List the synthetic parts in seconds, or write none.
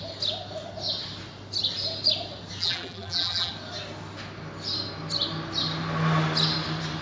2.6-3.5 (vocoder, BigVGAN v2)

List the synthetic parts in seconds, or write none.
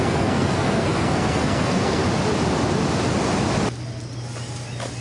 0.0-2.0 (codec, SNAC)